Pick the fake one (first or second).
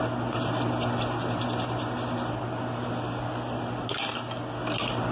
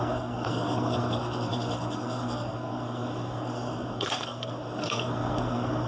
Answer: second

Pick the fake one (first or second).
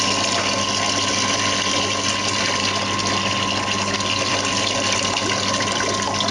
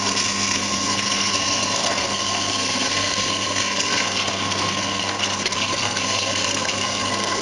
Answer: second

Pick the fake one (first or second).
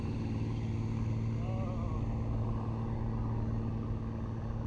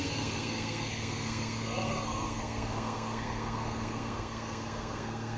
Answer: second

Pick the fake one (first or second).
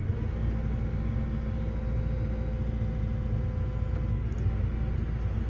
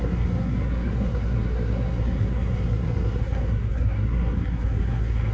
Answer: second